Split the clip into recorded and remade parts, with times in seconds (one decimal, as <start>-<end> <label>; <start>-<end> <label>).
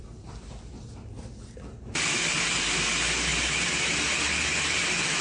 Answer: 0.0-5.2 recorded